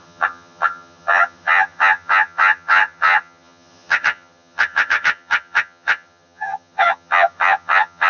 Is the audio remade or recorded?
remade